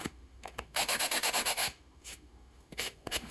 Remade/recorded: remade